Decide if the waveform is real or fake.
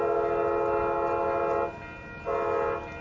real